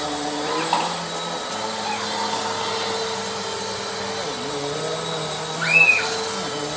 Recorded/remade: recorded